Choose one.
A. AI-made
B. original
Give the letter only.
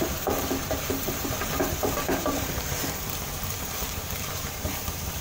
A